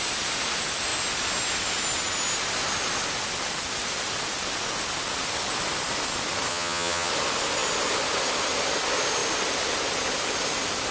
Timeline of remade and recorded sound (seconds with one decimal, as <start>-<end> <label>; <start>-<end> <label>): 0.0-6.5 recorded; 6.5-7.1 remade; 7.1-10.9 recorded